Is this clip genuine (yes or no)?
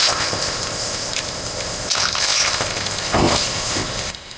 no